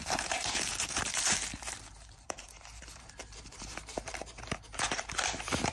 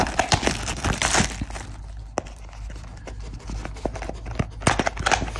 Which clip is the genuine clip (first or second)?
second